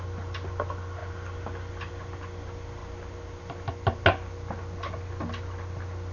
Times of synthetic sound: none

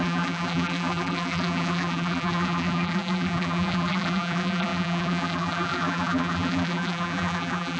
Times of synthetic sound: 0.0-7.8

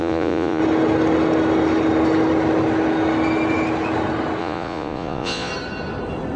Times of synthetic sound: 0.0-0.6; 4.4-5.5

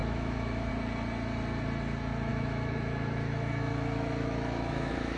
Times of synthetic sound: 0.0-0.7; 2.3-5.2

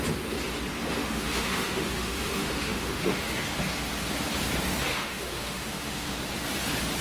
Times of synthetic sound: 1.0-3.4; 4.9-6.2